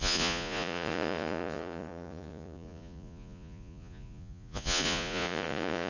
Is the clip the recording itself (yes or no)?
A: no